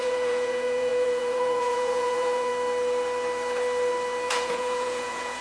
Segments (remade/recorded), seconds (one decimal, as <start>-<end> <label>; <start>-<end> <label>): 0.0-2.5 remade; 2.5-4.3 recorded; 4.3-5.4 remade